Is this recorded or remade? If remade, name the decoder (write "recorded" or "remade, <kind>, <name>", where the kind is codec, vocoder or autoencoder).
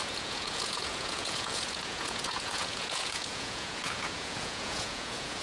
remade, vocoder, Vocos